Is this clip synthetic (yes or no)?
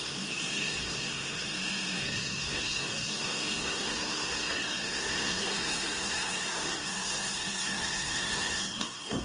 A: yes